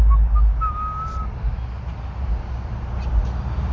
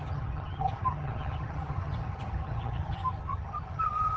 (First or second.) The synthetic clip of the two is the second